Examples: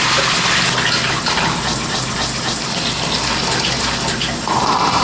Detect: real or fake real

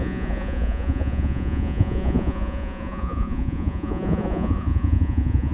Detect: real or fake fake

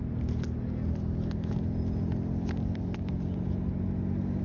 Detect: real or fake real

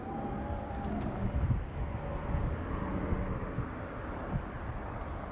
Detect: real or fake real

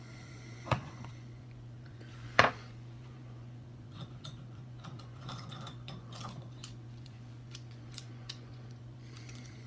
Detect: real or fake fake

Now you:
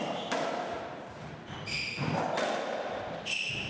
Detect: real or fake real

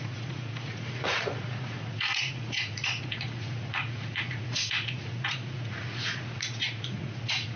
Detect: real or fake fake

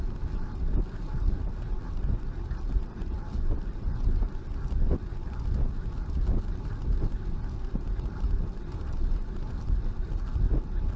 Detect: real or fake real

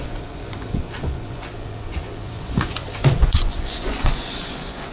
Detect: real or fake fake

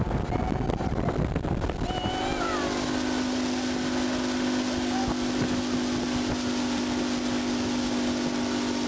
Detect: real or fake real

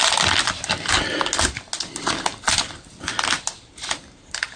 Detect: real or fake real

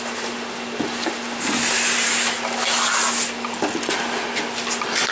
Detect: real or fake real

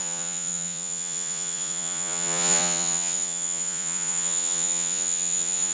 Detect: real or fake fake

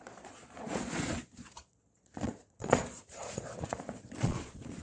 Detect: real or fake fake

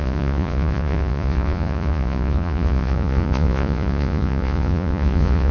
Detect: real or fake fake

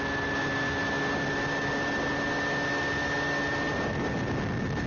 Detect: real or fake real